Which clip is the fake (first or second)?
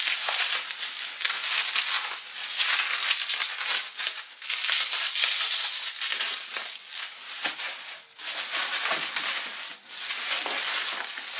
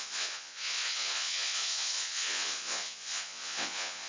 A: second